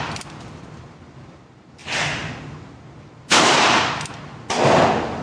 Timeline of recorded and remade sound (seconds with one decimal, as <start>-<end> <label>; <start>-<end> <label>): 0.0-5.2 recorded